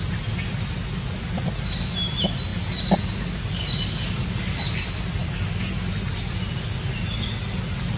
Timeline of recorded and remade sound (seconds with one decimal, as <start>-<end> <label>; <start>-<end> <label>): 0.0-2.5 recorded; 2.5-4.5 remade; 4.5-8.0 recorded